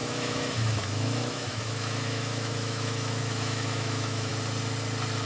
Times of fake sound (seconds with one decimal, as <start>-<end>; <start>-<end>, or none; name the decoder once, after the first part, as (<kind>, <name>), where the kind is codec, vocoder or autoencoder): 0.0-4.3 (autoencoder, DAC-VAE)